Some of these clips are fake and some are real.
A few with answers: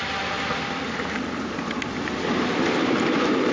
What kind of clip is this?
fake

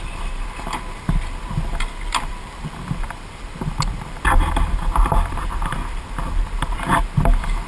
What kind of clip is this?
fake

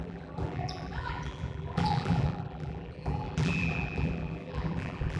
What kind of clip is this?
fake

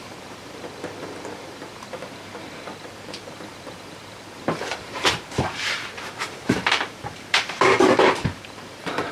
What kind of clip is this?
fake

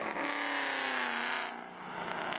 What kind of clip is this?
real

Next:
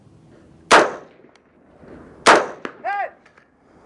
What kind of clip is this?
real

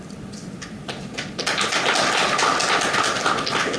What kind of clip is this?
fake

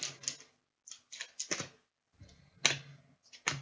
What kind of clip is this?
real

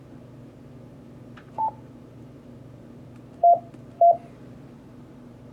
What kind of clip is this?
fake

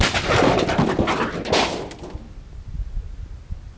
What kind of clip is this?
real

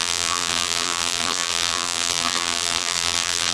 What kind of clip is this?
fake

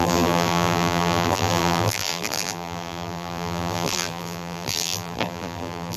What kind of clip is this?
fake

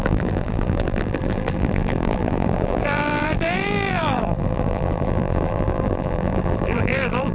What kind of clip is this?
fake